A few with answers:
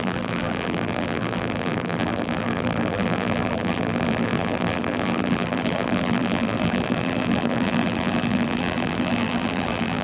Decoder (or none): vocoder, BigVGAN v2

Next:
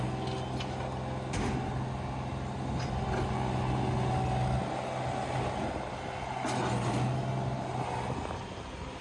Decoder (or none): none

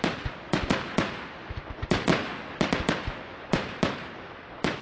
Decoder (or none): vocoder, BigVGAN v2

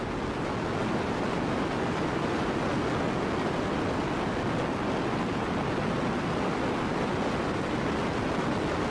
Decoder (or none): none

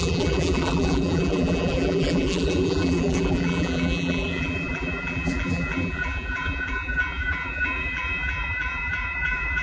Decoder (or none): vocoder, BigVGAN v2